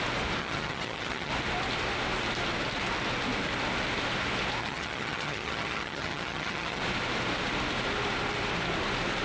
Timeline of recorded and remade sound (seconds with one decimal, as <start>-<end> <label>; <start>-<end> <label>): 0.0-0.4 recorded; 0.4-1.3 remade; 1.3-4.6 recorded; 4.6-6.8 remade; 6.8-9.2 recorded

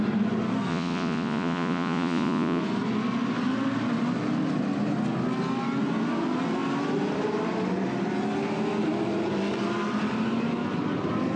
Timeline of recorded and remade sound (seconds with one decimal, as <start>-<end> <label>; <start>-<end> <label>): 0.0-0.7 recorded; 0.7-2.6 remade; 2.6-11.4 recorded

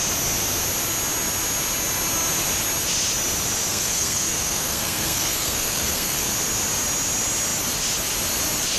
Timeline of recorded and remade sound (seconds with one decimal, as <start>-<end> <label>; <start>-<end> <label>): 0.0-3.7 recorded; 3.7-6.3 remade; 6.3-8.8 recorded

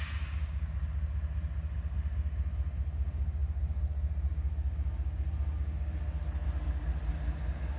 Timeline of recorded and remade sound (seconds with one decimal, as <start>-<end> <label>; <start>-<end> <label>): 0.0-7.8 recorded